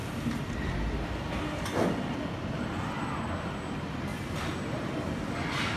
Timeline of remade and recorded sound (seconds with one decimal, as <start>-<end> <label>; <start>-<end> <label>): 0.0-5.8 recorded